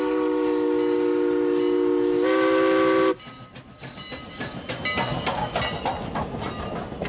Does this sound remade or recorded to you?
recorded